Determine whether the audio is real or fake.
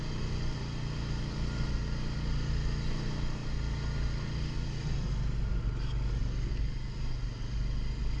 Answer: real